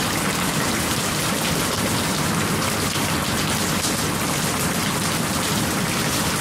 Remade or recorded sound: recorded